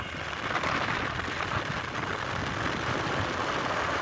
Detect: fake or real real